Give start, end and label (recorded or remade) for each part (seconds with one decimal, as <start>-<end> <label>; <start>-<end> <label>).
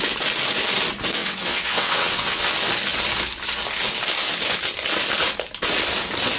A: 0.0-1.2 recorded; 1.2-2.5 remade; 2.5-6.4 recorded